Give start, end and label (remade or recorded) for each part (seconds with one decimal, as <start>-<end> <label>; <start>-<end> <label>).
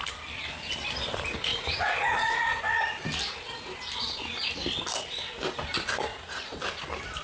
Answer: 0.0-1.5 recorded; 1.5-2.6 remade; 2.6-6.1 recorded; 6.1-6.6 remade; 6.6-7.2 recorded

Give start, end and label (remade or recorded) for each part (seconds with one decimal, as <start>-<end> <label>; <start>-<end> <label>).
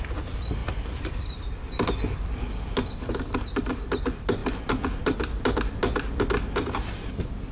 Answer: 0.0-0.6 recorded; 0.6-2.4 remade; 2.4-7.5 recorded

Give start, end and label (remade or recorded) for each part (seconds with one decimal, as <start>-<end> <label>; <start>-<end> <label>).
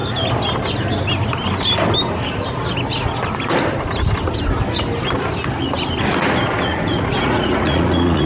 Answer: 0.0-6.7 recorded; 6.7-8.3 remade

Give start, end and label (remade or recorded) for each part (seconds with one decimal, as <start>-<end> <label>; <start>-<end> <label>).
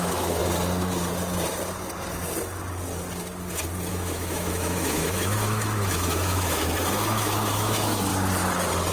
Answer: 0.0-0.4 remade; 0.4-3.9 recorded; 3.9-8.1 remade; 8.1-8.9 recorded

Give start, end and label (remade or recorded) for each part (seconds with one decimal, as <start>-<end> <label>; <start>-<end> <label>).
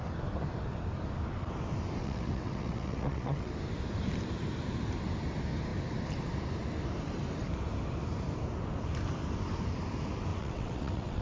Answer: 0.0-2.0 recorded; 2.0-3.5 remade; 3.5-10.3 recorded; 10.3-11.2 remade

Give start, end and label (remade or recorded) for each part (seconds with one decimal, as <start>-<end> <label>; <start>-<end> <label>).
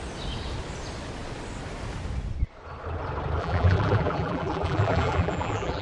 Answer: 0.0-3.4 recorded; 3.4-5.8 remade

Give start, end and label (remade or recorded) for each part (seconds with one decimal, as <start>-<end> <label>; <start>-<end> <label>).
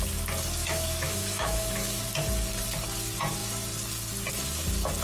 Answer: 0.0-0.6 recorded; 0.6-2.0 remade; 2.0-5.0 recorded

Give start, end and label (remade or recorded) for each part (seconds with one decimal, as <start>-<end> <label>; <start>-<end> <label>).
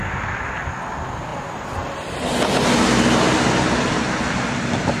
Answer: 0.0-5.0 recorded